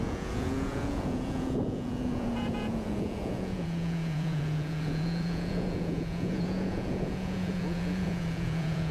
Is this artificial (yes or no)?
yes